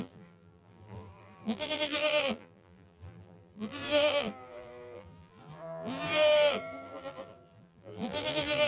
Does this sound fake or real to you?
fake